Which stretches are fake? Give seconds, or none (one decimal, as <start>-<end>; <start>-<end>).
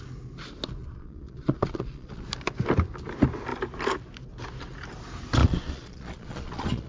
0.8-2.2; 5.4-6.9